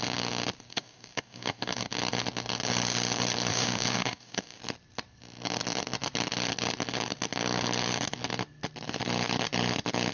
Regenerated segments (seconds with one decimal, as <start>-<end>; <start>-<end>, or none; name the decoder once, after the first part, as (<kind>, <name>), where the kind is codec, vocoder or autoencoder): 0.7-1.8 (codec, DAC); 3.5-4.6